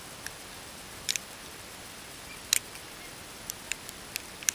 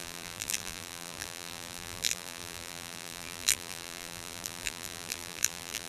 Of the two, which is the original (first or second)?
first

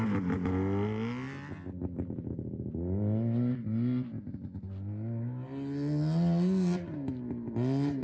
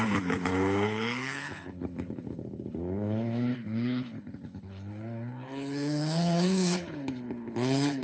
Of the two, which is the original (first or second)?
first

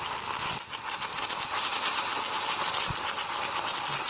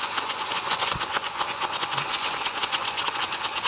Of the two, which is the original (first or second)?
first